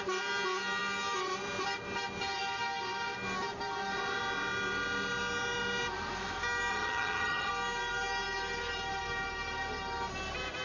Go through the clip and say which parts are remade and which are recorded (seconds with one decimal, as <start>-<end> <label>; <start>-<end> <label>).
0.0-6.7 recorded; 6.7-7.5 remade; 7.5-10.6 recorded